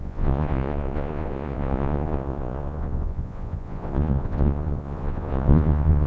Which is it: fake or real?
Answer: fake